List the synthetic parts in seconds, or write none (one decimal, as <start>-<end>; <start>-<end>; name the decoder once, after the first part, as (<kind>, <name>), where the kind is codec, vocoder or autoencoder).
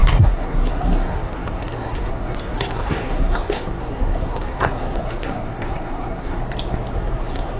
0.0-6.4 (codec, SNAC); 6.9-7.6